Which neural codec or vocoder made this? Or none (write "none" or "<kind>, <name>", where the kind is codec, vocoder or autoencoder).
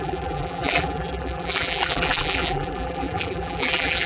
vocoder, BigVGAN v2